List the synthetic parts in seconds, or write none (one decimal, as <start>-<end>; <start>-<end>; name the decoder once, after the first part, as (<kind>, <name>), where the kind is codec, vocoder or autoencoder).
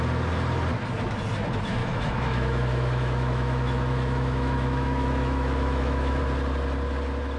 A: 1.8-6.2 (autoencoder, DAC-VAE)